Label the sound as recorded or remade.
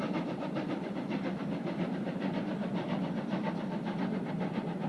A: remade